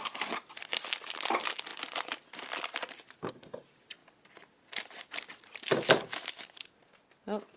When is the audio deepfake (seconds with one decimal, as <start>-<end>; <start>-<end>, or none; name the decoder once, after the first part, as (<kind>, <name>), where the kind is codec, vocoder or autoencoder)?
0.0-4.0 (vocoder, BigVGAN v2); 5.0-6.8